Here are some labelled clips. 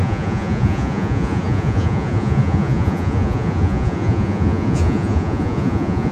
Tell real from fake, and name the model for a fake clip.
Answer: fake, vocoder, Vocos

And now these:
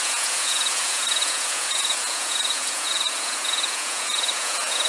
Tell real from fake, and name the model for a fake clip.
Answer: fake, vocoder, Vocos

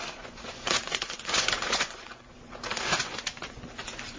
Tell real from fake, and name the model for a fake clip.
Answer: fake, vocoder, Vocos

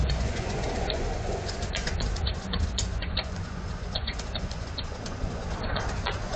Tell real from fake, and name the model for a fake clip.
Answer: fake, vocoder, Vocos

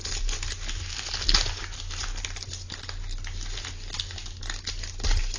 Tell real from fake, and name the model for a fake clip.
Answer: real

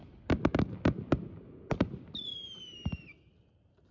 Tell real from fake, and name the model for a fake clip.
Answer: real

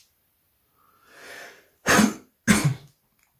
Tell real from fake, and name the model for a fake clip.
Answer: real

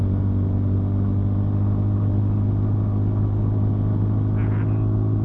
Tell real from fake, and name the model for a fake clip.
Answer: real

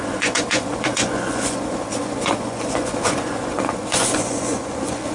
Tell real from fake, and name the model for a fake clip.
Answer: fake, vocoder, Vocos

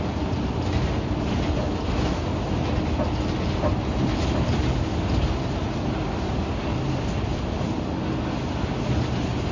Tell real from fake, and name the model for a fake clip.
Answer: real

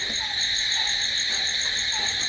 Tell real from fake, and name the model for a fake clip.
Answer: real